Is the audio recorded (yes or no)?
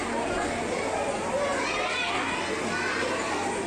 yes